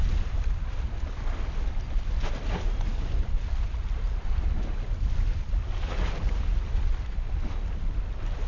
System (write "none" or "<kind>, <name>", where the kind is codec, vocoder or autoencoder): none